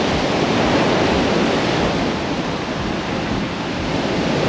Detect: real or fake real